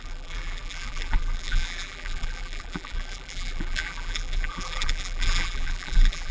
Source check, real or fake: fake